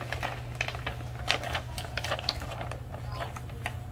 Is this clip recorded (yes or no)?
yes